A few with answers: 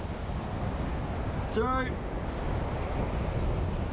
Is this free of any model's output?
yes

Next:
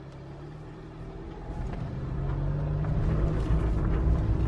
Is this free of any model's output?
yes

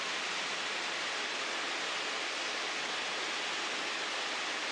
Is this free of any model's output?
yes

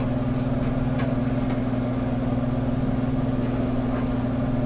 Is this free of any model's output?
yes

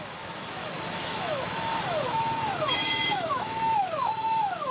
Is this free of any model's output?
no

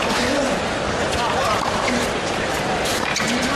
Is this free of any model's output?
yes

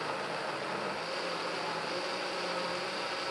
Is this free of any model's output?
yes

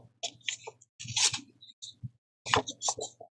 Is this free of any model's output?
yes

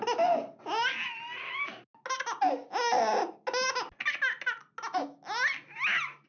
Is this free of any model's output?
yes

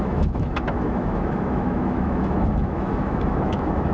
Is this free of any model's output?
no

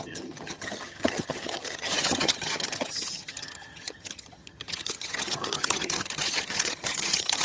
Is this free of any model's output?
no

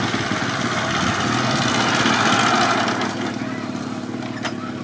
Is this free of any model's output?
yes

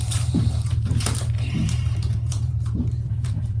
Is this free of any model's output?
no